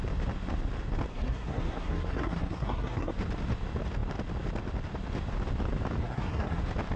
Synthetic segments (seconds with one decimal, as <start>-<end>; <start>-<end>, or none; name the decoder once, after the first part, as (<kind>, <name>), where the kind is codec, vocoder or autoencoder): 1.1-3.1 (codec, SNAC); 6.0-6.6